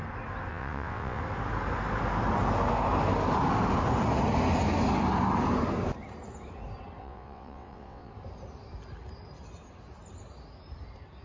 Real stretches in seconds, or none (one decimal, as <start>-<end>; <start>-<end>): 0.0-0.5; 1.2-7.0; 8.1-11.2

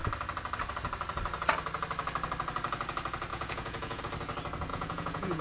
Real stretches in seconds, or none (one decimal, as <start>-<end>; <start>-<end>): 0.0-3.3; 4.0-4.7

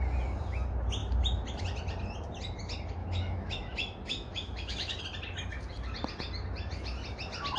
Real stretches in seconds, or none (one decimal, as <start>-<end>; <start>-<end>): 0.0-3.0; 5.0-7.6